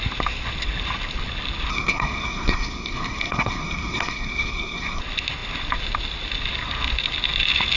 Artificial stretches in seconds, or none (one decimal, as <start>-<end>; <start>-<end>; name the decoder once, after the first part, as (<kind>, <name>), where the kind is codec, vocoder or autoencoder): 1.7-5.0 (codec, SNAC)